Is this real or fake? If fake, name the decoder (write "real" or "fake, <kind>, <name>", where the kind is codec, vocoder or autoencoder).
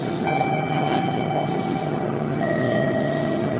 fake, vocoder, HiFi-GAN